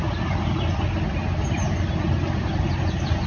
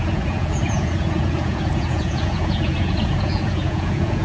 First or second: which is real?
first